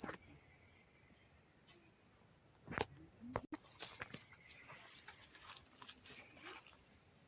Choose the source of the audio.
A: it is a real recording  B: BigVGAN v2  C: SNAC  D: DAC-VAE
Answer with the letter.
A